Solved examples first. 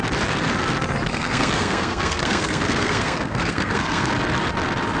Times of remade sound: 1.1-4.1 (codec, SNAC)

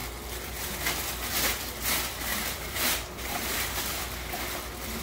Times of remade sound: 2.3-4.0 (vocoder, BigVGAN v2)

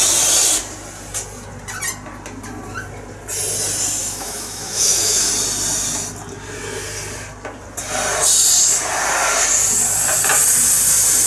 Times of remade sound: 4.0-5.3 (autoencoder, DAC-VAE)